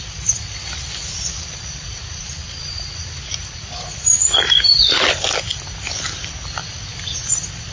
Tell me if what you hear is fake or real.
fake